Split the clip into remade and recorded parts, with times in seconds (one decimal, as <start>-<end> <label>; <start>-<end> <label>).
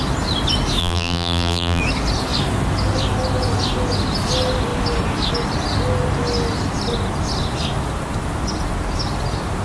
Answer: 0.0-0.8 recorded; 0.8-1.8 remade; 1.8-9.6 recorded